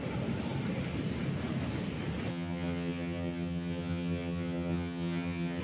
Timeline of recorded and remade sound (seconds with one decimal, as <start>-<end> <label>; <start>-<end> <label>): 0.0-2.3 recorded; 2.3-5.6 remade